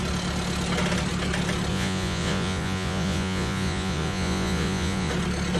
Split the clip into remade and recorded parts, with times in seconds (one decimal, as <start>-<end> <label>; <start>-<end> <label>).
0.0-1.7 recorded; 1.7-5.1 remade; 5.1-5.6 recorded